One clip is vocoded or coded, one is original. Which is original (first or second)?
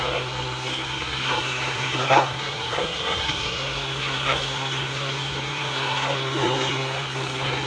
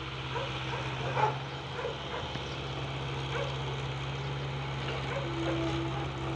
second